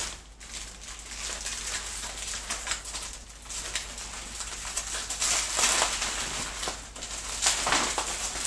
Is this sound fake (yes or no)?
no